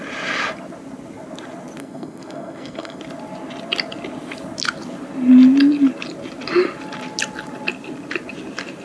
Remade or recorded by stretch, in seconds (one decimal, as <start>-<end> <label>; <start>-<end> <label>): 0.0-1.8 recorded; 1.8-3.0 remade; 3.0-8.8 recorded